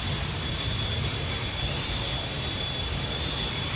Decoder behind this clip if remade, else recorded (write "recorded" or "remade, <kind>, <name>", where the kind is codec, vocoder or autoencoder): remade, vocoder, BigVGAN v2